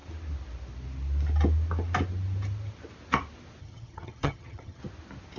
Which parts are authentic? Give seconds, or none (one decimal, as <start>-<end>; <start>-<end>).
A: 0.0-3.6; 4.8-5.4